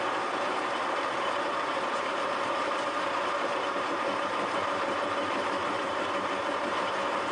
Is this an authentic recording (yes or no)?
no